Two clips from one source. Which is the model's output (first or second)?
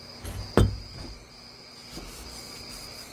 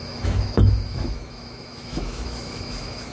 second